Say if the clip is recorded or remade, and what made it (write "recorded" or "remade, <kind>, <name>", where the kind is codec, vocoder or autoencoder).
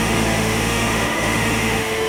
remade, autoencoder, DAC-VAE